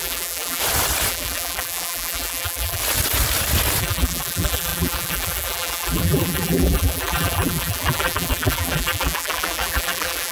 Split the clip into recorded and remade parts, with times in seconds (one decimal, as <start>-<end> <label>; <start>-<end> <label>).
0.0-0.6 remade; 0.6-1.1 recorded; 1.1-2.8 remade; 2.8-3.8 recorded; 3.8-10.3 remade